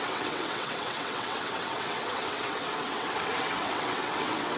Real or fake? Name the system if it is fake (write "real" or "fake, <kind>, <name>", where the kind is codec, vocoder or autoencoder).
fake, vocoder, WaveNeXt